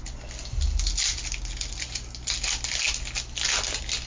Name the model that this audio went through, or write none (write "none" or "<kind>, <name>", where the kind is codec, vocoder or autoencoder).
none